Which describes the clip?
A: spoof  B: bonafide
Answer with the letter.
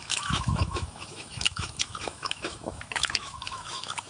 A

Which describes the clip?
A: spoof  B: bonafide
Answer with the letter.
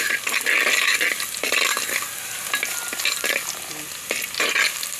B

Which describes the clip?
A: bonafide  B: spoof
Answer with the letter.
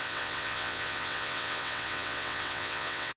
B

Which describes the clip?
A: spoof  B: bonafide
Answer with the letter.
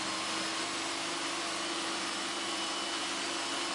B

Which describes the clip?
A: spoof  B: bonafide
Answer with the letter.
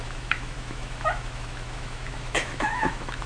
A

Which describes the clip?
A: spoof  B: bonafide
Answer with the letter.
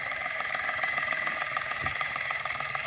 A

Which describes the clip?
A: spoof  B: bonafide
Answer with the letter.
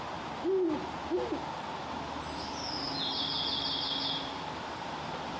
B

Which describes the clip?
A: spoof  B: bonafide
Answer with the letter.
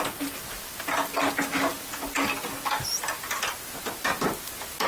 B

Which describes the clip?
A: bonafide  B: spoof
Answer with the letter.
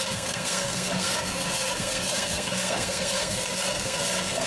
B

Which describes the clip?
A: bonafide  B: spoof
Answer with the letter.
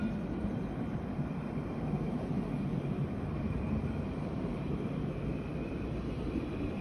B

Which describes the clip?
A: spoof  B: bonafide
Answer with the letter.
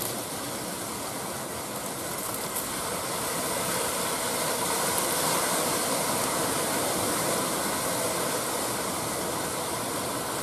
B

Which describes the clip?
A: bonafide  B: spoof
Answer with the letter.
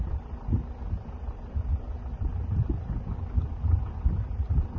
A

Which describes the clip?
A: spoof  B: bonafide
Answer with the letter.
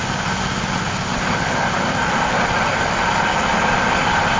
B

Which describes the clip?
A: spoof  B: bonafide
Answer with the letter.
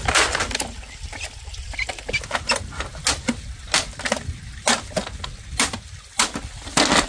B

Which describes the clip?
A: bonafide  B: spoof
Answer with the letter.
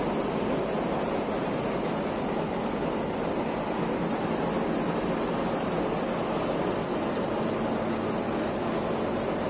A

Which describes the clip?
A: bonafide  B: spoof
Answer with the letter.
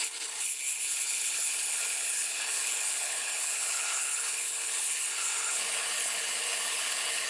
B